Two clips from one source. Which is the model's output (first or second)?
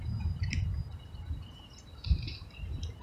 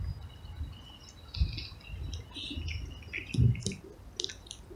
first